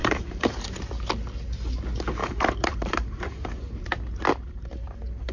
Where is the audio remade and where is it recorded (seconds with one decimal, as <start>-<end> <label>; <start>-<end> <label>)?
0.0-0.7 remade; 0.7-2.2 recorded; 2.2-3.8 remade; 3.8-4.3 recorded; 4.3-5.3 remade